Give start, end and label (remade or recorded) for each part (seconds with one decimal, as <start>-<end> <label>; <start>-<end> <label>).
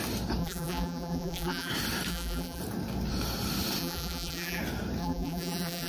0.0-0.4 recorded; 0.4-1.7 remade; 1.7-2.1 recorded; 2.1-2.6 remade; 2.6-3.8 recorded; 3.8-4.6 remade; 4.6-5.0 recorded; 5.0-5.9 remade